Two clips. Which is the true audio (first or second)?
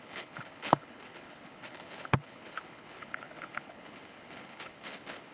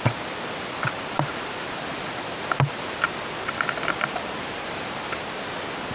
second